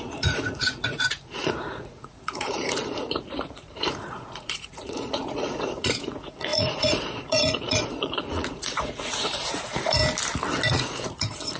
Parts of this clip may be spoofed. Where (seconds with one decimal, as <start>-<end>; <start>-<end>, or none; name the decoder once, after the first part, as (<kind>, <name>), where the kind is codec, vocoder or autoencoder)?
0.0-10.0 (vocoder, Vocos); 10.7-11.6